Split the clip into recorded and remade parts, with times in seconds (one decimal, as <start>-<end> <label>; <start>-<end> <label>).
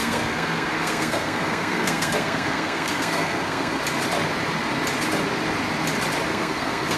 0.0-3.8 remade; 3.8-6.3 recorded; 6.3-7.0 remade